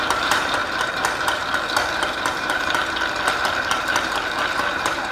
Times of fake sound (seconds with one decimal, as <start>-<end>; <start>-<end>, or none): 0.0-1.4; 2.0-2.8; 4.4-5.1